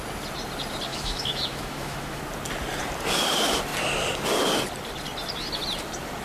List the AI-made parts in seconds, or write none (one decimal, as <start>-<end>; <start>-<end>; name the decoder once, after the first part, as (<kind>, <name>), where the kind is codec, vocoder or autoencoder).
0.9-2.2 (autoencoder, DAC-VAE)